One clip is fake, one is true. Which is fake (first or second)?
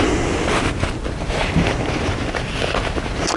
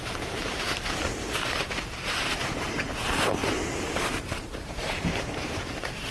second